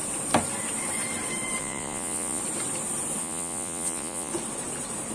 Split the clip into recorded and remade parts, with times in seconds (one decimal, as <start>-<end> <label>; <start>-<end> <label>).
0.0-1.6 recorded; 1.6-2.4 remade; 2.4-3.2 recorded; 3.2-4.3 remade; 4.3-5.1 recorded